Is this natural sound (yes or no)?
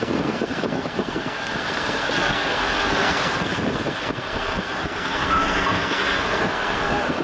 no